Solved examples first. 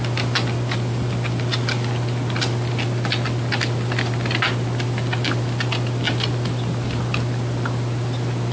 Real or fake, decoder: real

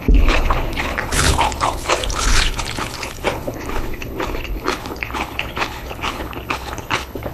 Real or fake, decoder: fake, codec, HILCodec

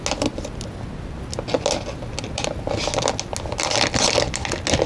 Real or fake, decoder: real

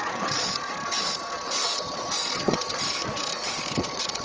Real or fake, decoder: fake, vocoder, Vocos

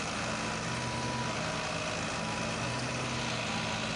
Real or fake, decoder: real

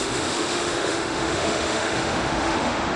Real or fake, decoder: fake, autoencoder, DAC-VAE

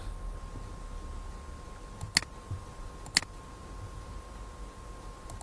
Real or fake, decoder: real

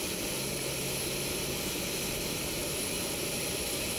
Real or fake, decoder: real